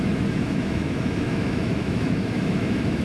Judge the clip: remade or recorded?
remade